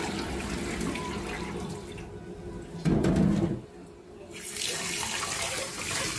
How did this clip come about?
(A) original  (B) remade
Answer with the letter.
A